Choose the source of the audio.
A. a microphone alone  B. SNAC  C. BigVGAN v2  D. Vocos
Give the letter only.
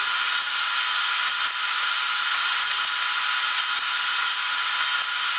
A